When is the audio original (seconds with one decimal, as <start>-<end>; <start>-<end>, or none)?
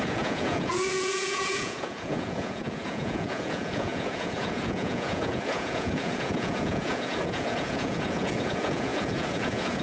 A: none